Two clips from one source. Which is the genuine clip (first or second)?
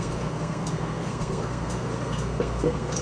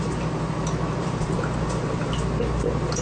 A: second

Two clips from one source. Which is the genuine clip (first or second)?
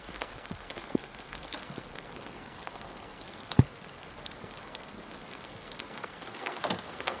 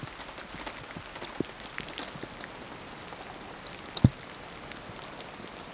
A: second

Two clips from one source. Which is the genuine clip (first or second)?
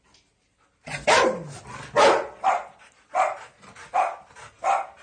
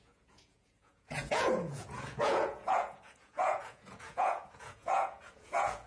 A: first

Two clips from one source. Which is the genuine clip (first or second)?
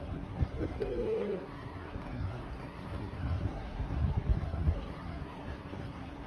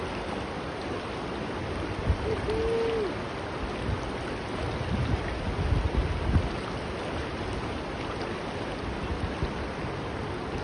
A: second